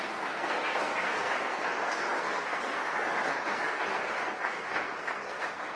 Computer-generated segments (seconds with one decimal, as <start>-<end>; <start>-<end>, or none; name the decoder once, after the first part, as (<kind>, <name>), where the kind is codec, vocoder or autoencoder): 0.0-5.8 (codec, SNAC)